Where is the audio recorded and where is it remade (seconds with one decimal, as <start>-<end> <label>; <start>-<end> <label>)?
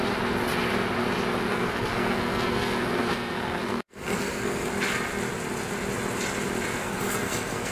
0.0-1.5 recorded; 1.5-4.7 remade; 4.7-6.8 recorded; 6.8-7.7 remade